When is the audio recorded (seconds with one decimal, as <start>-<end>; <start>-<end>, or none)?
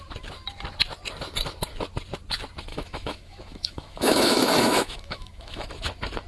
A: 0.0-2.7; 5.7-6.3